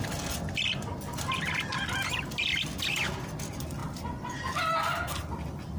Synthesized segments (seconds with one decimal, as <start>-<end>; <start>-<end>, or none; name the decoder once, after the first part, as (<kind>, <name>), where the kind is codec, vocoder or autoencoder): none

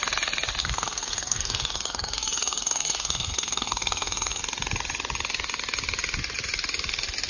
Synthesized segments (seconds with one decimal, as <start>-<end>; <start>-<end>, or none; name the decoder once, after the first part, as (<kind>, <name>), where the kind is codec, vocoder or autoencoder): 0.6-4.4 (codec, SNAC)

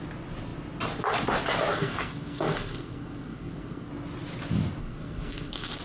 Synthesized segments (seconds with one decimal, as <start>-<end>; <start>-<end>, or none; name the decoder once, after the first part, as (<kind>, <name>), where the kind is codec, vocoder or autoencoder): 1.7-3.9 (codec, SNAC); 4.8-5.8

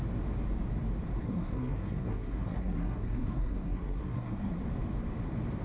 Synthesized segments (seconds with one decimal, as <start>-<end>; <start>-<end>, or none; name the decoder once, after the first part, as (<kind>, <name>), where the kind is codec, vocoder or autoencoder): 1.2-4.6 (codec, SNAC)

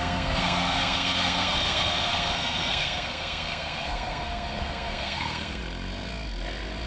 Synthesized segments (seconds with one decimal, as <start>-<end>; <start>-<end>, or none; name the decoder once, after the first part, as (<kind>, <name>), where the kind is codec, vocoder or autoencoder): 0.0-5.6 (codec, SNAC)

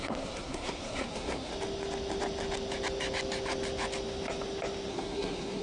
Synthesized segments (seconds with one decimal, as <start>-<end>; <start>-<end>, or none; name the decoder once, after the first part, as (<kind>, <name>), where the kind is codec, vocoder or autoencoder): 0.0-1.5 (codec, SNAC); 4.9-5.6

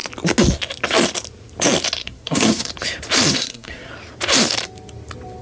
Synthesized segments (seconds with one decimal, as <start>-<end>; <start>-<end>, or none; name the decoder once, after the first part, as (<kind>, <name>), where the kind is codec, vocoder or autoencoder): 2.0-2.7 (codec, SNAC); 3.3-3.9